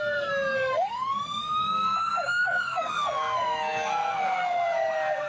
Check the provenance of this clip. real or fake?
fake